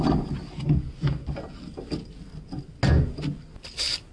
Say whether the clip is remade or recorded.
recorded